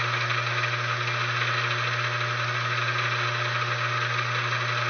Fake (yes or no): no